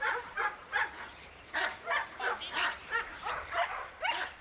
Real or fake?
fake